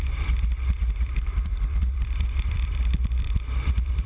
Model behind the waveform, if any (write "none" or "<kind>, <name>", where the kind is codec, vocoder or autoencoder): vocoder, BigVGAN v2